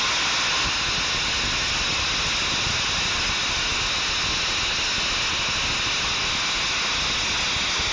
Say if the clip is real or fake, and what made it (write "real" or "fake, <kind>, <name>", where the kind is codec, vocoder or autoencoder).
real